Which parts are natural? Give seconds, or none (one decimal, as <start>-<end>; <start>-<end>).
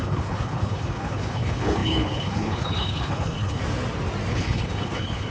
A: 3.6-4.3